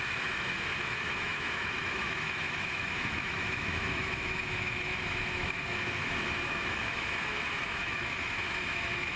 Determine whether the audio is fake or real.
fake